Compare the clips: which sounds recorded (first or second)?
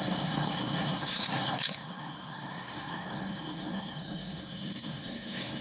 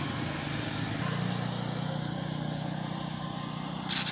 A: second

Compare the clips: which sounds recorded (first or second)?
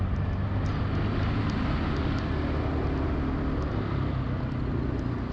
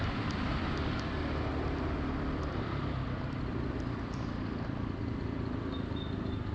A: first